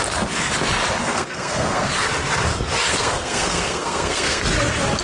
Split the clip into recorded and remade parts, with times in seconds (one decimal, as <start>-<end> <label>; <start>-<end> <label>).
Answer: 0.0-1.0 recorded; 1.0-1.9 remade; 1.9-2.9 recorded; 2.9-4.4 remade; 4.4-5.0 recorded